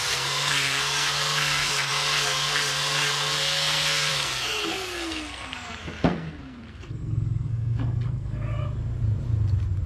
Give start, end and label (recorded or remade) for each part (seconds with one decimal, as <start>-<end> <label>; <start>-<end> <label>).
0.0-8.6 remade; 8.6-9.9 recorded